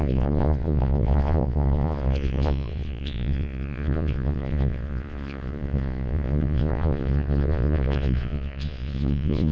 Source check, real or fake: fake